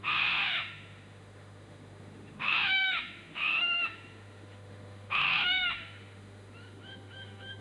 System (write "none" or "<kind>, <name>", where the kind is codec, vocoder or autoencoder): autoencoder, DAC-VAE